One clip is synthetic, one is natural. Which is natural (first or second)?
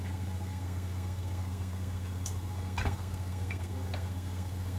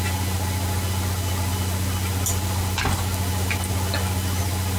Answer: second